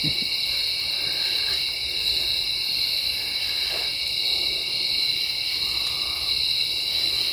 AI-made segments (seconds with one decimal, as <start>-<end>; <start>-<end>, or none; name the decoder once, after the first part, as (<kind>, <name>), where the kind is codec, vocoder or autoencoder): none